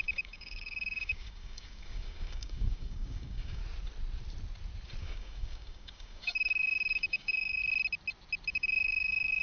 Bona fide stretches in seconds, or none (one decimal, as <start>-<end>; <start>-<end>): 3.6-5.0; 7.6-8.5